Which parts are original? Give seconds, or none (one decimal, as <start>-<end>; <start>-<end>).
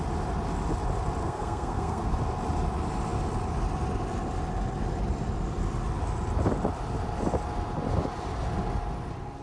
0.0-1.2; 2.1-9.4